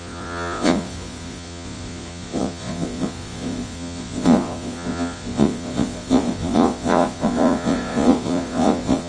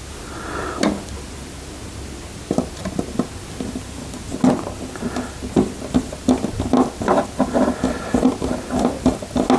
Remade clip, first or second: first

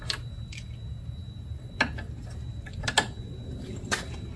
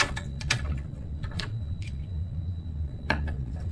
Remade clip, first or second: second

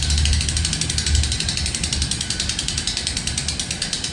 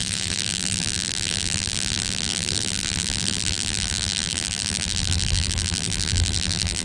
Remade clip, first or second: second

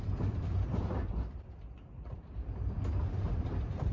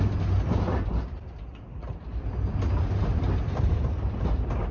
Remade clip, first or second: first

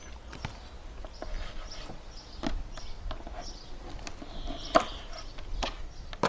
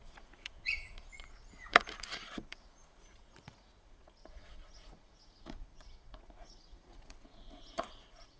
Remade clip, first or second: second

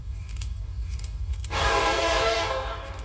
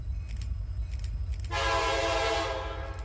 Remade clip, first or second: first